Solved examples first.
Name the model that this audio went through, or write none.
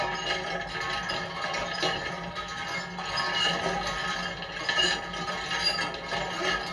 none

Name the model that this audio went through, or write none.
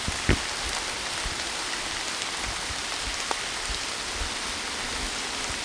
none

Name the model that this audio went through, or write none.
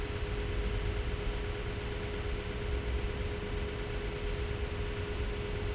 none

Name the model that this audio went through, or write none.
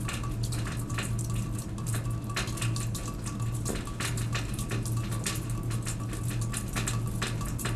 none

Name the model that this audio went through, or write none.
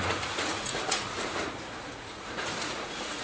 vocoder, Vocos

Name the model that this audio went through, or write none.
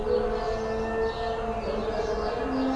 none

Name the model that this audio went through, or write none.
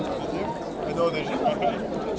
none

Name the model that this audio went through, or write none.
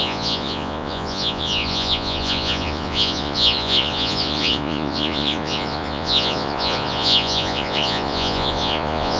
vocoder, Vocos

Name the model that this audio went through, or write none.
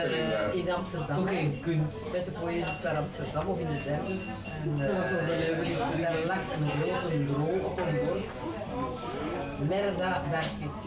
none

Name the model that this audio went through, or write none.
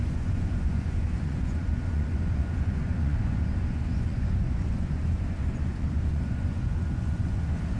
vocoder, Vocos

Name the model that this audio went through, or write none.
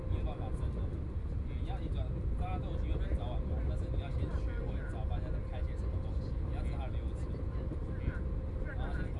none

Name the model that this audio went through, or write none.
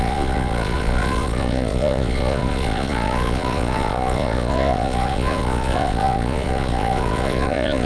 vocoder, Vocos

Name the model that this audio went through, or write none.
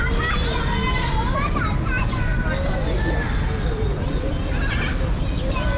none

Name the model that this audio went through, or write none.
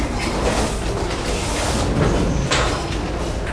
none